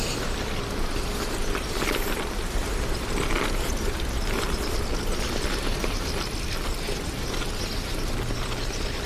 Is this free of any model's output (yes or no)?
yes